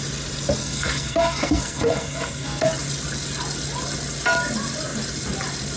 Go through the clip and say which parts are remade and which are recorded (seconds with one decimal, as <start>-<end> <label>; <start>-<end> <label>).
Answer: 0.0-0.6 recorded; 0.6-2.7 remade; 2.7-5.8 recorded